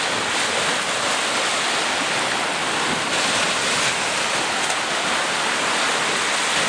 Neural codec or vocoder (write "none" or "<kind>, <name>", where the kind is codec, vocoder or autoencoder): none